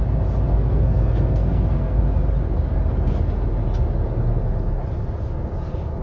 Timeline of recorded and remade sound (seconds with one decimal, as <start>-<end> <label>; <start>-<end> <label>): 0.0-0.5 recorded; 0.5-2.0 remade; 2.0-6.0 recorded